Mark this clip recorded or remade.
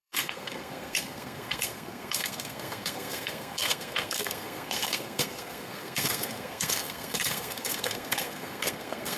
remade